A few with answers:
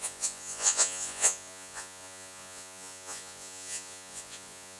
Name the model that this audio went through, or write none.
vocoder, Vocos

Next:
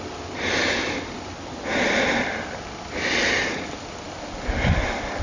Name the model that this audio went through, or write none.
none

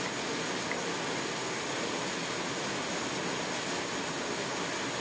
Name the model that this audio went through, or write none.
none